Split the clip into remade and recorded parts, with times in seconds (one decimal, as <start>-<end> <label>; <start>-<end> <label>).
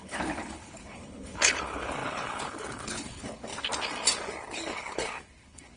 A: 0.0-3.5 remade; 3.5-4.4 recorded; 4.4-5.8 remade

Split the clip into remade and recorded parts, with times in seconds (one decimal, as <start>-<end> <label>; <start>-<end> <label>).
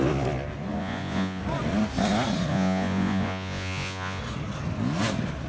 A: 0.0-0.8 recorded; 0.8-1.4 remade; 1.4-2.5 recorded; 2.5-4.2 remade; 4.2-5.5 recorded